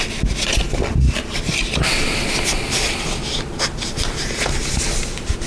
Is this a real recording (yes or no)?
yes